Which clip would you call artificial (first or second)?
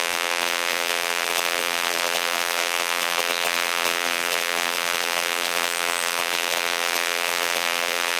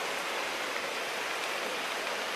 first